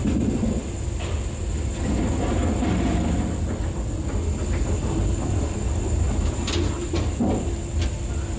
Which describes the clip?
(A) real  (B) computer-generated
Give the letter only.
A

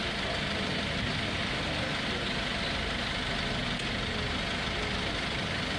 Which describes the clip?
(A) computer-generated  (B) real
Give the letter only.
B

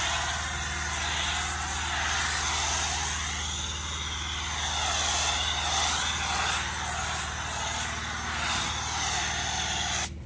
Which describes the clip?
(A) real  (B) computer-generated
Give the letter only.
A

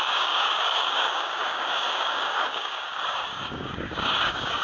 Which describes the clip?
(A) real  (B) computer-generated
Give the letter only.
B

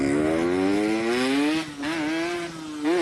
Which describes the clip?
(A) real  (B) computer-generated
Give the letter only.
A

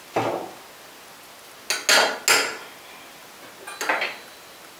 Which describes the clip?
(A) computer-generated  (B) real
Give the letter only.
B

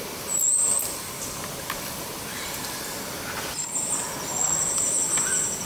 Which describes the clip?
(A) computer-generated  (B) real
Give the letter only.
B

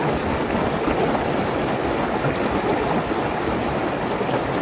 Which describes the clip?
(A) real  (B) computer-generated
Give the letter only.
A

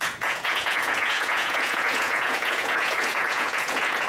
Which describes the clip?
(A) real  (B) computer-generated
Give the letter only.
B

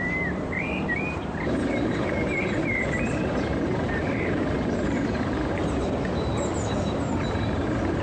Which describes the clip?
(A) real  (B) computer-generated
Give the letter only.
B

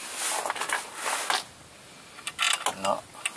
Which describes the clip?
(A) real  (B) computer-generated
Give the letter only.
A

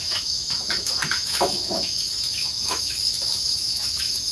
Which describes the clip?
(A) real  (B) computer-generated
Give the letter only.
B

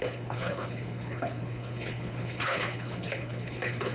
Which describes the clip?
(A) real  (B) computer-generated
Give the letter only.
B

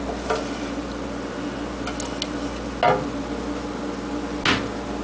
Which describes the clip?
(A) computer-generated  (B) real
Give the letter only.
B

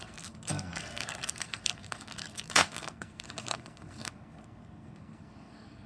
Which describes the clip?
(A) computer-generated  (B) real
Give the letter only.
A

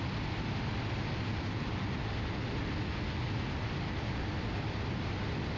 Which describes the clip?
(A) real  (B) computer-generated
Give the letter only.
A